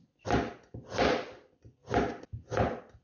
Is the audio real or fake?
real